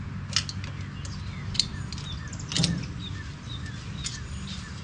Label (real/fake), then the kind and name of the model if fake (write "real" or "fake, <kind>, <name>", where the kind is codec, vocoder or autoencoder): real